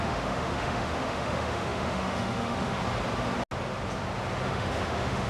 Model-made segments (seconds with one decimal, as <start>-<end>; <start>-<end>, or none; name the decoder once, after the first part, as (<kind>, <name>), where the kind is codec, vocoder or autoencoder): 0.0-2.8 (autoencoder, DAC-VAE); 4.5-5.3